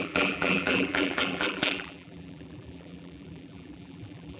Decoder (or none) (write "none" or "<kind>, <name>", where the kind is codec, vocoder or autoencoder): vocoder, BigVGAN v2